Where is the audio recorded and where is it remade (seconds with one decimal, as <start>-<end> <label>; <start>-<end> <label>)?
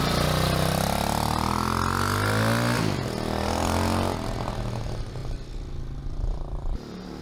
0.0-7.2 recorded